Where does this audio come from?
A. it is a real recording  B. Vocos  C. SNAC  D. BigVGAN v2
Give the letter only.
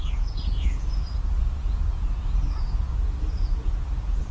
B